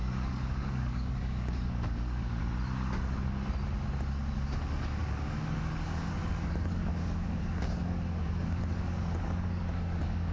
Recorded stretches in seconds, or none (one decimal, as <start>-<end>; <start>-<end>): 2.4-4.6